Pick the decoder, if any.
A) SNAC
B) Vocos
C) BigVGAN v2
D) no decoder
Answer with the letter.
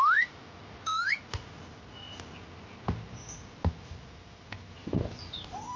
D